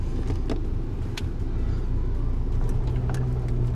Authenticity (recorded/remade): recorded